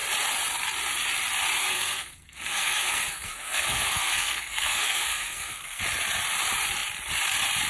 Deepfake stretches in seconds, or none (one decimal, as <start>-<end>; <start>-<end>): 1.6-5.8